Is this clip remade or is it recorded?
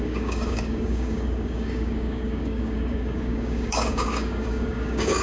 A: remade